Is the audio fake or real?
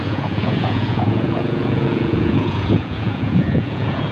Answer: fake